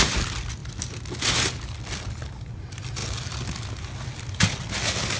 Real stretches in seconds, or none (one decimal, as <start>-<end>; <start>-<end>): 0.0-5.2